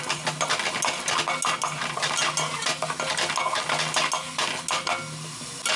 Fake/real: real